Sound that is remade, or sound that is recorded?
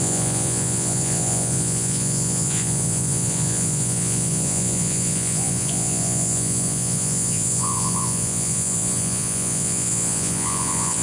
remade